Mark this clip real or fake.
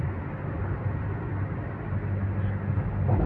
real